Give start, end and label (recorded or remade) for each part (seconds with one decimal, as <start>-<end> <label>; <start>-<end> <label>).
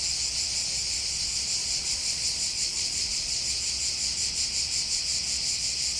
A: 0.0-1.6 recorded; 1.6-3.4 remade; 3.4-6.0 recorded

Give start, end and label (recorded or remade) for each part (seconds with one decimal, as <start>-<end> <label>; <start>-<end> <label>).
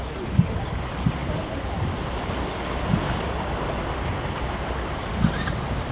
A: 0.0-5.9 recorded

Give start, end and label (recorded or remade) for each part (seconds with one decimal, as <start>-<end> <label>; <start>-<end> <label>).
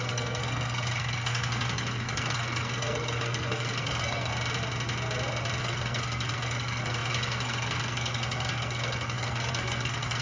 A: 0.0-4.3 remade; 4.3-5.6 recorded; 5.6-10.2 remade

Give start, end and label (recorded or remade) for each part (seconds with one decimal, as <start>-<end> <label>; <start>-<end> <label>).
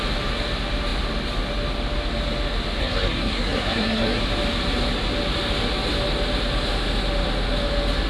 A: 0.0-2.8 recorded; 2.8-4.2 remade; 4.2-8.1 recorded